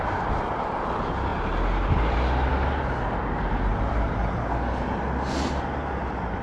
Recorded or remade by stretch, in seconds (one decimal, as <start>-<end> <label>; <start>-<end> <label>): 0.0-3.7 recorded; 3.7-4.5 remade; 4.5-6.4 recorded